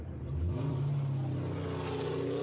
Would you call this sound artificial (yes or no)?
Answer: no